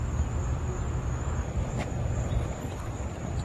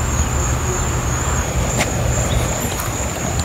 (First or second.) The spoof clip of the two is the first